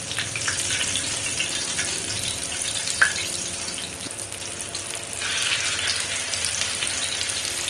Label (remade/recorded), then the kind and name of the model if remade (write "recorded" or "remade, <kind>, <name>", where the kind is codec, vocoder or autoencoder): recorded